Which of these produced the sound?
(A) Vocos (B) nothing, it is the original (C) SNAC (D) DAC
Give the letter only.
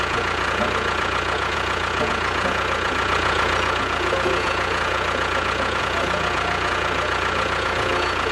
A